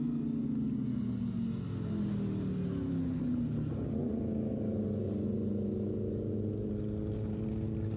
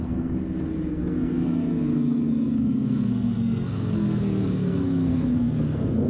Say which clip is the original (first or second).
first